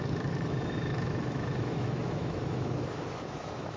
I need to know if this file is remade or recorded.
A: remade